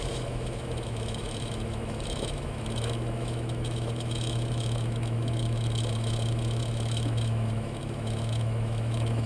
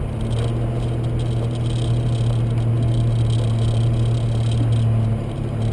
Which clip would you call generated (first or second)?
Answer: first